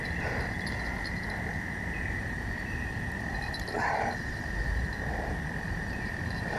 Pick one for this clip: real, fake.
fake